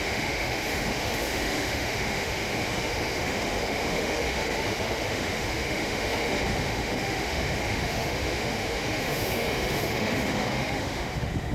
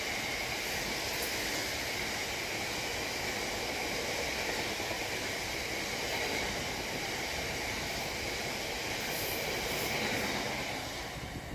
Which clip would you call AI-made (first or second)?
first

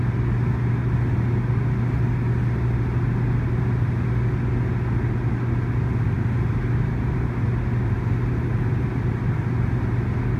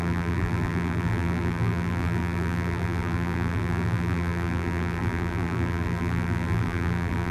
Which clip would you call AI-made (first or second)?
second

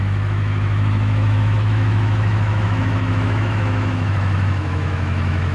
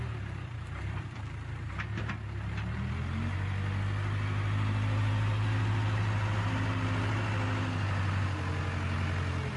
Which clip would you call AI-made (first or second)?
first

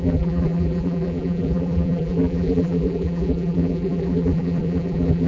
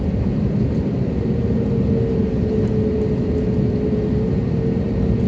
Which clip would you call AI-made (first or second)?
first